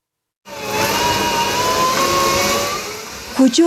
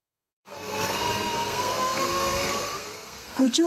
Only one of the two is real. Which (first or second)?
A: first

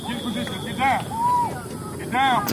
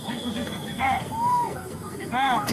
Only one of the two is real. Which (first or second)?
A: first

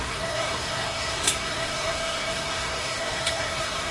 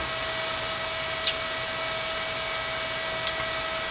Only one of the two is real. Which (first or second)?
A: second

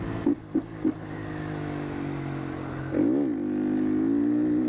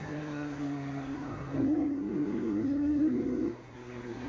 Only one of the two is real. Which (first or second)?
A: first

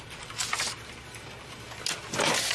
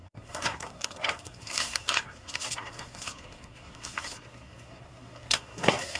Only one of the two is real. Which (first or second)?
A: first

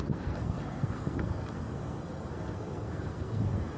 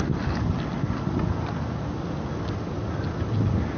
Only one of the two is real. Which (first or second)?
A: second